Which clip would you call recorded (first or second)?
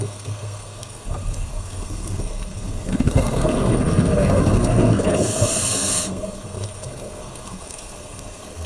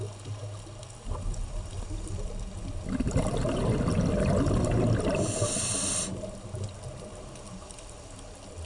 second